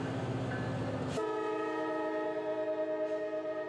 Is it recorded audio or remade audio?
recorded